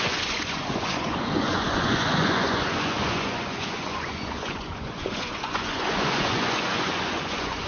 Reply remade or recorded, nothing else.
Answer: remade